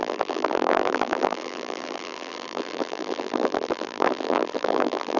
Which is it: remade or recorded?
remade